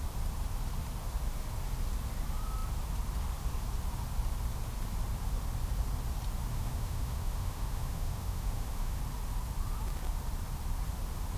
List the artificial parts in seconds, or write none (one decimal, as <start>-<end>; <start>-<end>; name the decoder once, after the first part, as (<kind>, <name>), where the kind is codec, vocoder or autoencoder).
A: 6.5-9.0 (autoencoder, DAC-VAE)